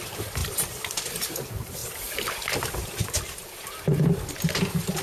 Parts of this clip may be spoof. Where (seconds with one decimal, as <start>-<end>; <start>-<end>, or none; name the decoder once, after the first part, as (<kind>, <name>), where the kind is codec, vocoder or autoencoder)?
0.4-1.1 (vocoder, BigVGAN v2)